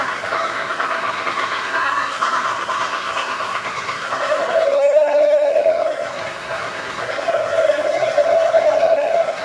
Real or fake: fake